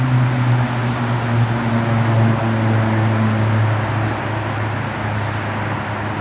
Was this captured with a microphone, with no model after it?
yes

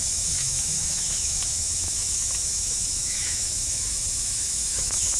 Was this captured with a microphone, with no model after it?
no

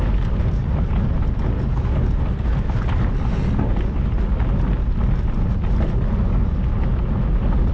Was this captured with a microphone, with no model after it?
yes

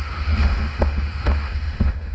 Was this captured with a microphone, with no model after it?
no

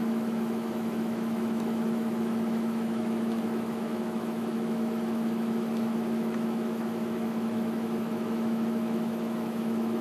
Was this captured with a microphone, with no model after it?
no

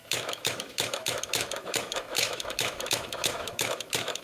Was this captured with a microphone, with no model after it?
no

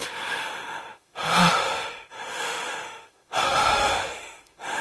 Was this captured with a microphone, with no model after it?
no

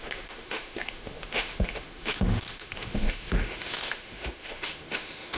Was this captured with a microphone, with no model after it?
no